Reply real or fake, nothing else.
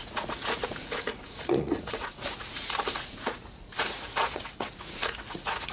fake